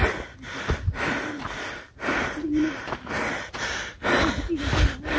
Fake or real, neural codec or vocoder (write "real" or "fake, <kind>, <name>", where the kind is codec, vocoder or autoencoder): real